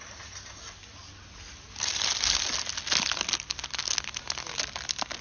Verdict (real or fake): real